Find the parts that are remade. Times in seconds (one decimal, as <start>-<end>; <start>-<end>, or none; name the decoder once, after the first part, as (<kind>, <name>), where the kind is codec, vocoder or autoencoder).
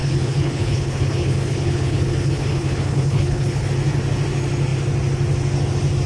0.0-3.7 (codec, HILCodec)